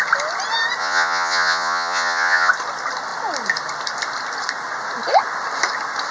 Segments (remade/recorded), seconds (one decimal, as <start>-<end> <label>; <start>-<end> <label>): 0.0-0.8 recorded; 0.8-2.5 remade; 2.5-6.1 recorded